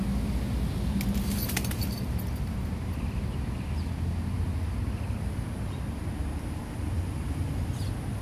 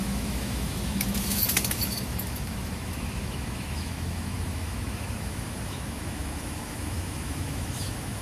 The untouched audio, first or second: first